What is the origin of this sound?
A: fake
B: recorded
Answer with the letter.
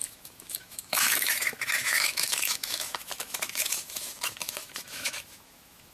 A